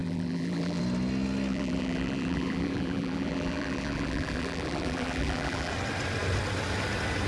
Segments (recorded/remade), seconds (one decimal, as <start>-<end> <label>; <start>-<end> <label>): 0.0-0.8 remade; 0.8-1.5 recorded; 1.5-5.7 remade; 5.7-7.3 recorded